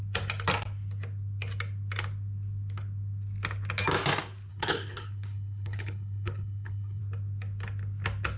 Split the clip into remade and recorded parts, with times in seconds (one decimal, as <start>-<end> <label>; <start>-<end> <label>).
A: 0.0-4.5 recorded; 4.5-7.0 remade; 7.0-8.4 recorded